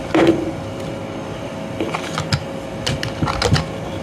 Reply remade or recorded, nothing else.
recorded